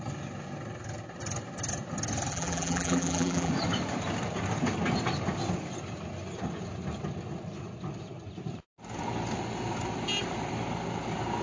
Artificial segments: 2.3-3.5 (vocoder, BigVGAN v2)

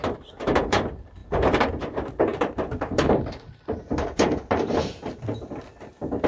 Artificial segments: 0.6-1.2 (vocoder, BigVGAN v2); 1.8-6.3